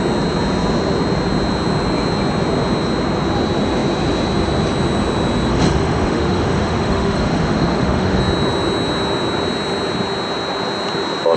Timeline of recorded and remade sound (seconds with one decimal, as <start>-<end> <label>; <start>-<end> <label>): 0.0-5.5 recorded; 5.5-8.2 remade; 8.2-11.4 recorded